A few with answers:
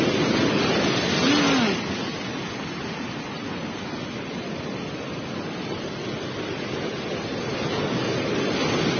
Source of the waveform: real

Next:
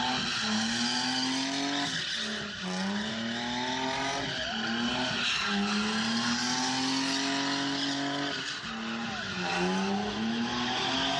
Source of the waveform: real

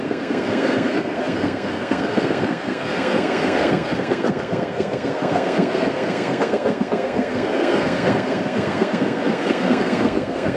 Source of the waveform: fake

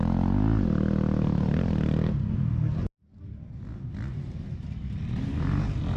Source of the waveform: real